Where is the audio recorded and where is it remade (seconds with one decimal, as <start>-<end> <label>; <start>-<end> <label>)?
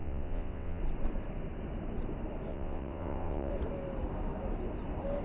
0.0-0.8 remade; 0.8-2.5 recorded; 2.5-3.5 remade; 3.5-5.2 recorded